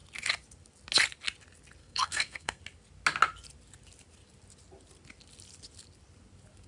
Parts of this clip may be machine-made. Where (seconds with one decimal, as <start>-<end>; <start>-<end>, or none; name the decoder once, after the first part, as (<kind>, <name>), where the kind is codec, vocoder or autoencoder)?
1.8-2.6 (codec, SNAC)